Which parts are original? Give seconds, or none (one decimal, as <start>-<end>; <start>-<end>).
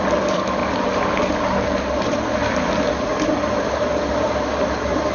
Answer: 0.6-3.7